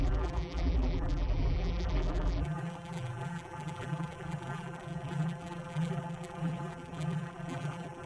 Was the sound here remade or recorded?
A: remade